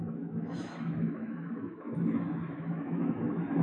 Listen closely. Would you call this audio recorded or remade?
remade